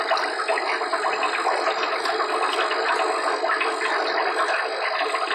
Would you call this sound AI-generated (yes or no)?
yes